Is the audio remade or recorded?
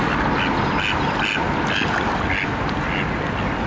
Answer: recorded